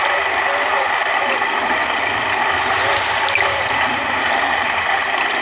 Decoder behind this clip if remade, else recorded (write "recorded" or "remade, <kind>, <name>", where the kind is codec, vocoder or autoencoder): recorded